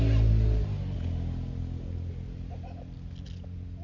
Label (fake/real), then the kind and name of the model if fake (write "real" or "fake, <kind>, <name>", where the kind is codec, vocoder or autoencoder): real